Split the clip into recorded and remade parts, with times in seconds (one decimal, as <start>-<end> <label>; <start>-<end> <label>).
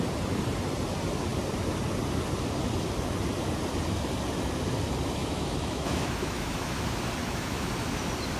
0.0-5.2 recorded; 5.2-6.8 remade; 6.8-7.2 recorded; 7.2-7.7 remade; 7.7-8.4 recorded